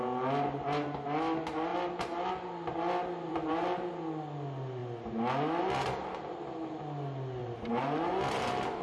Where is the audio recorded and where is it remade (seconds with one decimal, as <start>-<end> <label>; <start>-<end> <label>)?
0.0-3.3 recorded; 3.3-3.9 remade; 3.9-7.4 recorded; 7.4-8.1 remade; 8.1-8.8 recorded